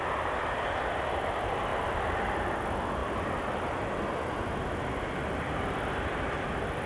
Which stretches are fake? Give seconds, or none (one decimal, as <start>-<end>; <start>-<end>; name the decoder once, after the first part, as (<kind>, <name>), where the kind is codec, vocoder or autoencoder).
none